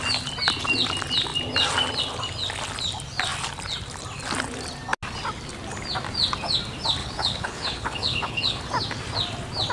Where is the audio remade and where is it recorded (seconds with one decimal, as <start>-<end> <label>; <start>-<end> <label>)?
0.0-7.0 recorded; 7.0-8.6 remade; 8.6-9.7 recorded